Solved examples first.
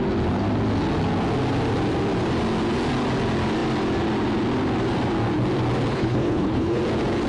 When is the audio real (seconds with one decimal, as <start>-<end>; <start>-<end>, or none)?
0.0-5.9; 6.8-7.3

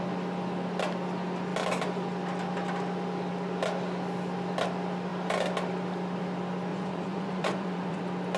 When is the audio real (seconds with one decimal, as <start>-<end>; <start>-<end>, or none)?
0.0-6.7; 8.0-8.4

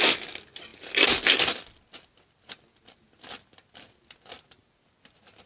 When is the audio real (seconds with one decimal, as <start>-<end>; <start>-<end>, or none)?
0.0-5.5

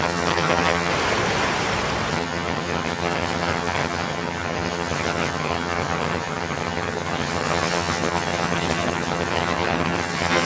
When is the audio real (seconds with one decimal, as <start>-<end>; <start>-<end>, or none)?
0.9-2.1

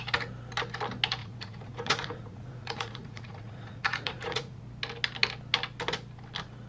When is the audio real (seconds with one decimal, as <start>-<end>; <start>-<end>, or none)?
0.0-1.2; 4.6-6.7

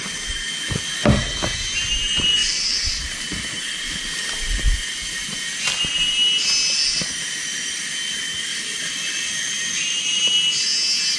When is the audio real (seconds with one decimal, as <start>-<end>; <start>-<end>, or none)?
0.0-2.4; 4.0-8.5; 10.3-11.2

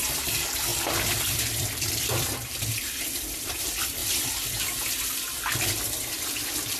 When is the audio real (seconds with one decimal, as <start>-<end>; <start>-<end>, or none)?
none